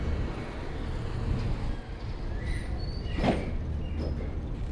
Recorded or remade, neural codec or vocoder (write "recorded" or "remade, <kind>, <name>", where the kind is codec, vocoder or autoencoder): recorded